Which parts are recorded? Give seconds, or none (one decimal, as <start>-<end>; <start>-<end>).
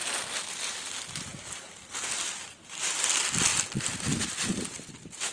0.0-5.3